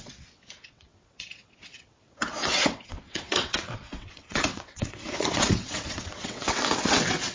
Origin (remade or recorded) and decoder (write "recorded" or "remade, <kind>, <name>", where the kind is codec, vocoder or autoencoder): remade, vocoder, WaveNeXt